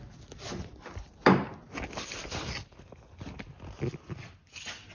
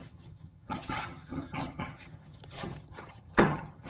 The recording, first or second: first